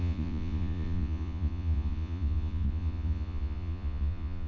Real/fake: fake